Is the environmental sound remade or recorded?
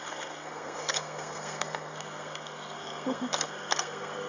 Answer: remade